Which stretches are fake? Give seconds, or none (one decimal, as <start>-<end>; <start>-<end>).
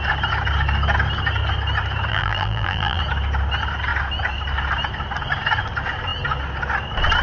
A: 2.1-3.0